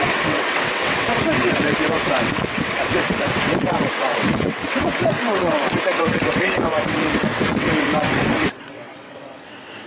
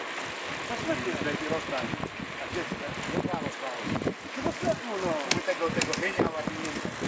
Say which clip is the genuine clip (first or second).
second